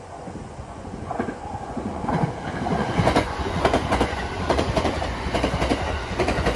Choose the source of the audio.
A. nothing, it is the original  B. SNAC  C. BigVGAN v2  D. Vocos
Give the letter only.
D